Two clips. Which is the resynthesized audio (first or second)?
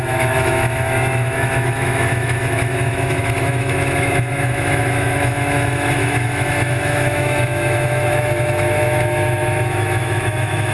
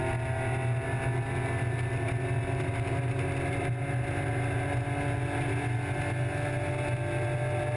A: first